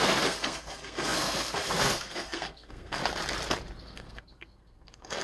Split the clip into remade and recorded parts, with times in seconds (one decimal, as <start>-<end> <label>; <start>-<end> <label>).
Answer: 0.0-3.0 remade; 3.0-3.8 recorded; 3.8-5.2 remade